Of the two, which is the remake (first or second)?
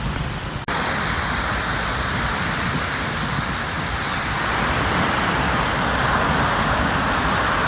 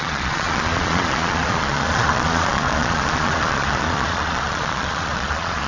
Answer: second